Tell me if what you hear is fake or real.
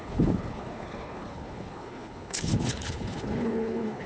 fake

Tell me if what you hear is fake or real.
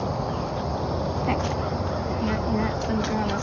real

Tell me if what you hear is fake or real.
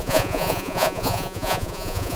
fake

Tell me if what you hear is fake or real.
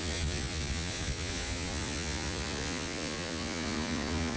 fake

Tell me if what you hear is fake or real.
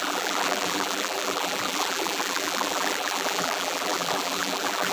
fake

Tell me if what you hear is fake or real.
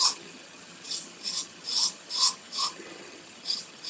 fake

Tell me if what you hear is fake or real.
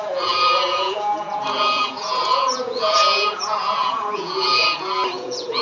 fake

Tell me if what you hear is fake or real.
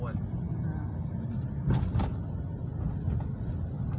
real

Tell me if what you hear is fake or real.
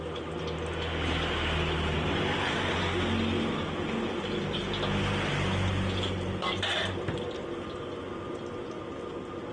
real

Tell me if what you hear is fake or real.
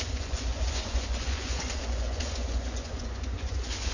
fake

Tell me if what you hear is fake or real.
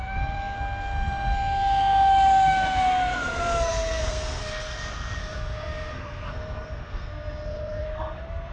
fake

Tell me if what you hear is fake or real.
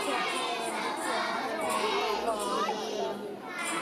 real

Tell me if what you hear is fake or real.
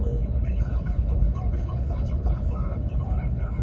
fake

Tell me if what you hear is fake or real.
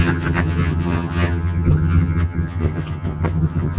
fake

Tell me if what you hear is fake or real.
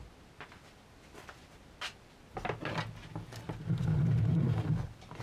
real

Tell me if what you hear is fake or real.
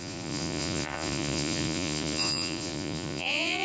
fake